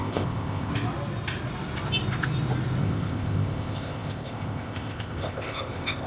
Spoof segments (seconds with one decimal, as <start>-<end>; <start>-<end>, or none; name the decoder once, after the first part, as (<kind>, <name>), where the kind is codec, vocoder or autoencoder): 0.0-0.7 (codec, ZipCodec); 2.8-6.1